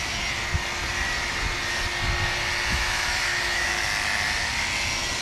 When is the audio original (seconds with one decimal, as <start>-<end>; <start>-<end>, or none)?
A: 0.0-2.7; 3.7-5.2